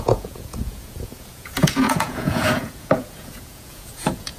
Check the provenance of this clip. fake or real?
fake